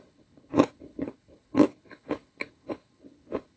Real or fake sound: fake